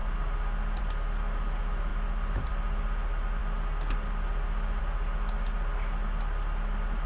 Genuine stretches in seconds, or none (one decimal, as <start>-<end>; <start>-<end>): 0.0-7.1